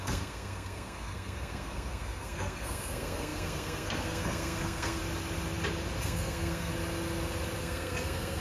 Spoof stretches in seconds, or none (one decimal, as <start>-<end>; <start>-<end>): 0.0-5.0; 6.0-6.7; 7.6-8.4